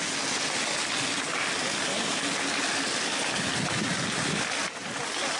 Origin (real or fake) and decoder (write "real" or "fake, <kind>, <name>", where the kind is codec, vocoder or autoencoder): real